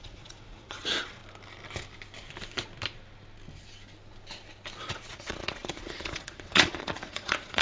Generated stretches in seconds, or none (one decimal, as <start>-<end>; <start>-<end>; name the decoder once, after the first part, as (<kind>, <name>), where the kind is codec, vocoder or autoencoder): 0.0-1.2 (vocoder, Vocos); 4.8-7.6